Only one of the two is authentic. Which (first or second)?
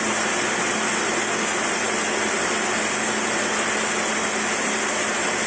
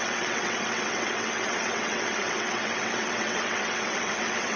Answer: first